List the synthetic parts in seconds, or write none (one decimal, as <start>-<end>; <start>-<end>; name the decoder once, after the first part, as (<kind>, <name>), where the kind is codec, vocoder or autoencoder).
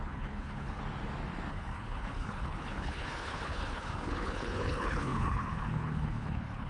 0.0-0.8 (codec, HILCodec); 1.5-6.7